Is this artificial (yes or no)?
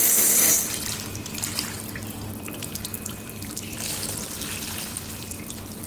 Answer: yes